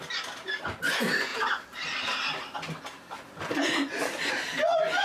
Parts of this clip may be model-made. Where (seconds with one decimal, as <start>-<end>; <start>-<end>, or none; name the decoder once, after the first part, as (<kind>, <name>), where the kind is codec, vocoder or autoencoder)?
1.3-4.3 (vocoder, BigVGAN v2)